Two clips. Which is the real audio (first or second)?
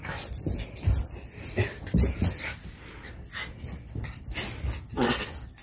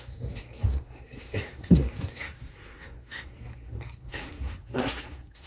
first